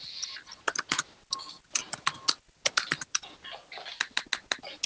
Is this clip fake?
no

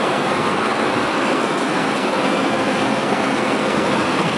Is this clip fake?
yes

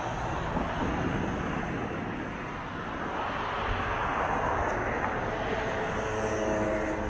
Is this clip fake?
no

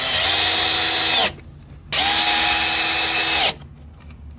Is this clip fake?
no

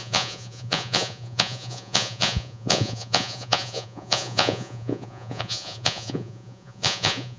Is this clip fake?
yes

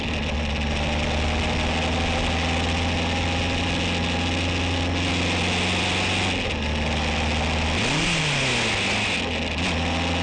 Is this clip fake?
no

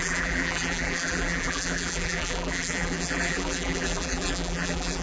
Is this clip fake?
yes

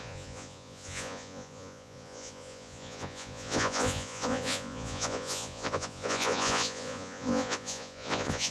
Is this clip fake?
yes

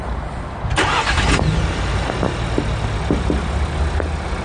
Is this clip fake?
no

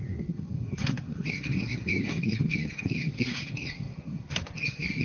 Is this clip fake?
yes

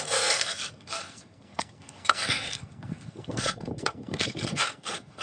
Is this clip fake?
yes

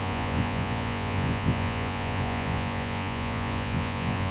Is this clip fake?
yes